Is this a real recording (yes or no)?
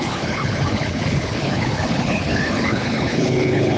no